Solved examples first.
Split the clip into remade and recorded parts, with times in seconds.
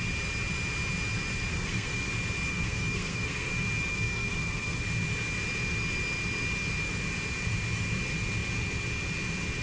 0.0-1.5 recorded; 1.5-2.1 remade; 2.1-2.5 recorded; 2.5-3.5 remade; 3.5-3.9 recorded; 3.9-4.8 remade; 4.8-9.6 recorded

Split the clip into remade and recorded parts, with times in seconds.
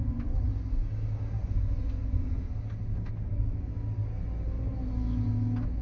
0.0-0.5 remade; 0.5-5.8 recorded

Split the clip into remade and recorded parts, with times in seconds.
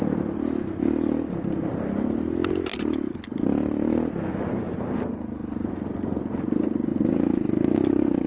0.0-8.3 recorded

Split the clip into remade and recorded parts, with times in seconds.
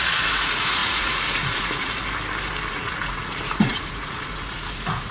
0.0-2.0 remade; 2.0-2.7 recorded; 2.7-5.1 remade